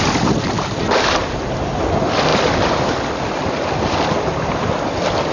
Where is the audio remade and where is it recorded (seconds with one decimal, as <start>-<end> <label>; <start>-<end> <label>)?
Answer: 0.0-5.3 recorded